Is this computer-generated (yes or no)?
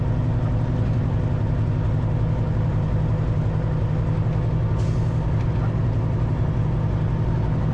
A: no